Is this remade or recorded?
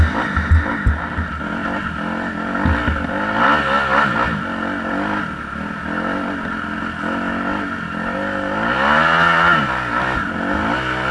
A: recorded